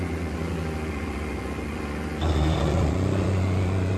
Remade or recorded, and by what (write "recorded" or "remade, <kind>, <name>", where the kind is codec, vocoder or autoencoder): remade, vocoder, Vocos